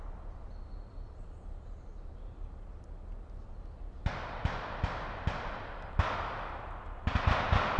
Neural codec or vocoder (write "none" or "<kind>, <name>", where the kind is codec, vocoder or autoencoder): none